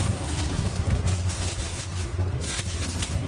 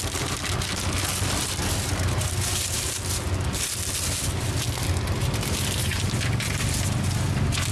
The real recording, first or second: second